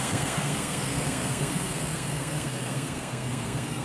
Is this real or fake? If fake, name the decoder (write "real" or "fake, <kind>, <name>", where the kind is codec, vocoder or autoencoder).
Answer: fake, codec, SNAC